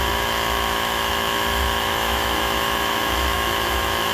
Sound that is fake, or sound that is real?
fake